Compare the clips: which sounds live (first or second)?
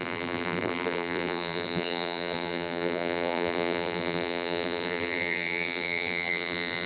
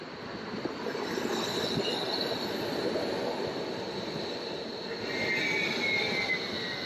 second